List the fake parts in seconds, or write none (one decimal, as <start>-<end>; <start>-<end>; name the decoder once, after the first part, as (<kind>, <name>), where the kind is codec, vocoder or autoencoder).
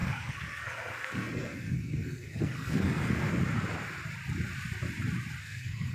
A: 0.0-3.3 (codec, SNAC); 5.4-5.9